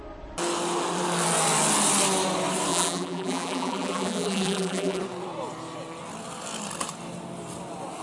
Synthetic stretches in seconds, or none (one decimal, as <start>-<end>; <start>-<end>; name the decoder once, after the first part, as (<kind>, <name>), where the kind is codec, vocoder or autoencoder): 2.7-5.0 (vocoder, BigVGAN v2)